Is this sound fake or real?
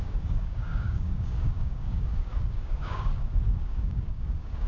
fake